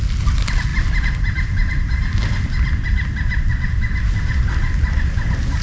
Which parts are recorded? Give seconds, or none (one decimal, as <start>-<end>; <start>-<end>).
0.0-5.6